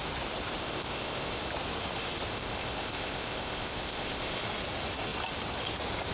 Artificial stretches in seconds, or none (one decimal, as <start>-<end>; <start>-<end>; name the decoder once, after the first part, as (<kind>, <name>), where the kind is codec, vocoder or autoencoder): 0.6-1.5 (codec, ZipCodec); 2.3-4.4